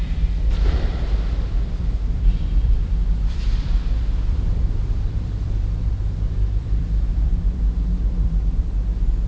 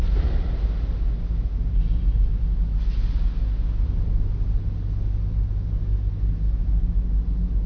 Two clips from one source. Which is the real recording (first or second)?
second